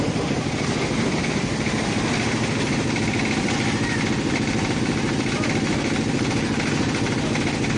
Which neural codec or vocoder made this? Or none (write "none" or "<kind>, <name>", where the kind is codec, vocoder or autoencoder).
vocoder, BigVGAN v2